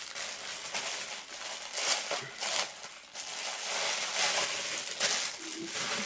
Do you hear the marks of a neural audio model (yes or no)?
no